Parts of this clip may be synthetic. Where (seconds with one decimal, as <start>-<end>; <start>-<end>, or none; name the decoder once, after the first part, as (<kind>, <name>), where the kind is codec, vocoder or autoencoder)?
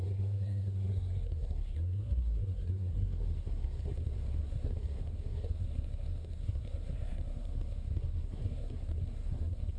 0.0-9.8 (codec, SNAC)